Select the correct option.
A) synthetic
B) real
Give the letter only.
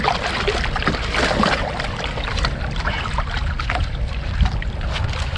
B